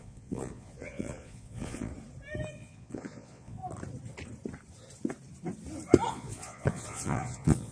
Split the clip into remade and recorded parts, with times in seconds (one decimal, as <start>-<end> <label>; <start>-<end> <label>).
0.0-1.9 remade; 1.9-2.5 recorded; 2.5-3.6 remade; 3.6-6.1 recorded; 6.1-7.7 remade